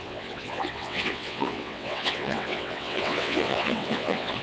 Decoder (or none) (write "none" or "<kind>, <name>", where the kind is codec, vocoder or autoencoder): vocoder, WaveNeXt